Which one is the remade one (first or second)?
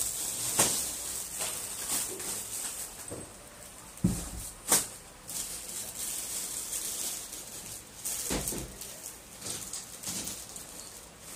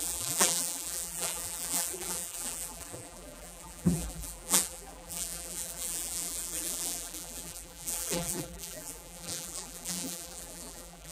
second